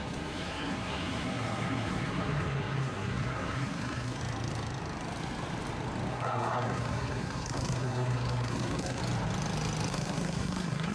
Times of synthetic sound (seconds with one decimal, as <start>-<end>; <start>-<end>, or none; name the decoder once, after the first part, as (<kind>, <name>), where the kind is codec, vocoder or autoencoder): 0.0-4.2 (codec, SNAC); 6.1-9.0; 9.9-10.9